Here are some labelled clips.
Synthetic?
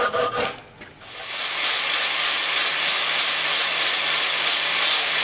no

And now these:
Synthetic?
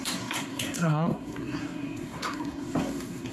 yes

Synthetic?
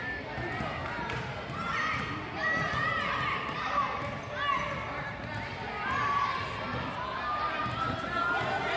no